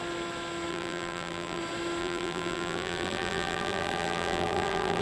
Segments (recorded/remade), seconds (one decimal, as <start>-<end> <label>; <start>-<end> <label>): 0.0-0.7 recorded; 0.7-1.6 remade; 1.6-2.0 recorded; 2.0-5.0 remade